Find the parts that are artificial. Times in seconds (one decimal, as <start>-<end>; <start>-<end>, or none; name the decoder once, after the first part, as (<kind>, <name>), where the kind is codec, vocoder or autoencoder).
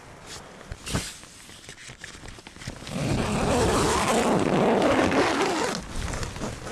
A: none